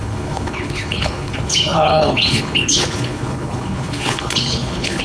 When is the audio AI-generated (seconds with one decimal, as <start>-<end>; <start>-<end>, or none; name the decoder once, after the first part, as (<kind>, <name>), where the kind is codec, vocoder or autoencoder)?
0.0-5.0 (codec, HILCodec)